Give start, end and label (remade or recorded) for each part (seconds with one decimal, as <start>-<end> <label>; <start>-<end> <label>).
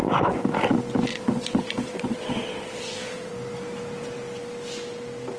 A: 0.0-1.1 recorded; 1.1-3.3 remade; 3.3-5.4 recorded